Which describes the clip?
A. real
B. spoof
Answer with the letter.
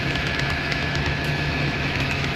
B